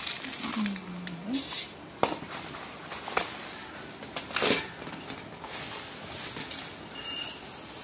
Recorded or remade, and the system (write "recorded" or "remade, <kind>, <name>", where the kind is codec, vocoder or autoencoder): recorded